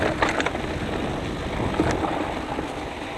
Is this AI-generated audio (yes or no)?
no